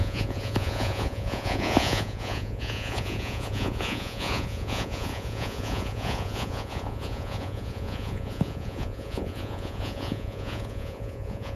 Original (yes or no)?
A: no